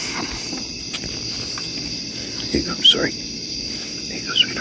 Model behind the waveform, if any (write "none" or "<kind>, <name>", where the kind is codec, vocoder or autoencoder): none